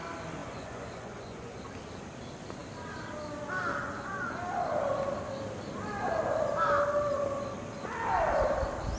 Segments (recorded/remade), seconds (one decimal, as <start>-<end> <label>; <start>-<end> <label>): 0.0-0.4 recorded; 0.4-1.6 remade; 1.6-3.8 recorded; 3.8-4.4 remade; 4.4-9.0 recorded